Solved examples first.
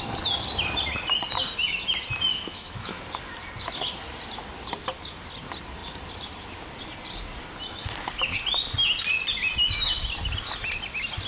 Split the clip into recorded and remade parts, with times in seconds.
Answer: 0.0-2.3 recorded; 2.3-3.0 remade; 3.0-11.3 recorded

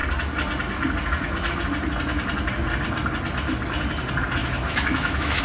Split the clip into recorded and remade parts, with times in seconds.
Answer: 0.0-4.4 recorded; 4.4-5.4 remade

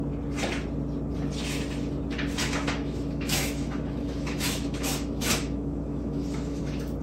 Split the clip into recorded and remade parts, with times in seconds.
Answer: 0.0-2.4 recorded; 2.4-6.6 remade; 6.6-7.0 recorded

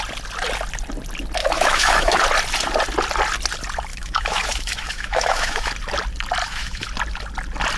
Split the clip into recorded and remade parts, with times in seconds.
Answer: 0.0-1.4 recorded; 1.4-2.2 remade; 2.2-3.9 recorded; 3.9-5.7 remade; 5.7-6.4 recorded; 6.4-6.9 remade; 6.9-7.8 recorded

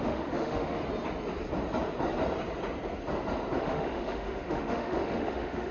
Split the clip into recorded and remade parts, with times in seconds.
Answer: 0.0-0.8 remade; 0.8-3.6 recorded; 3.6-5.7 remade